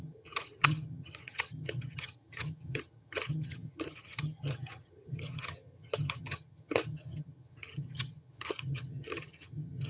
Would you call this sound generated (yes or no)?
yes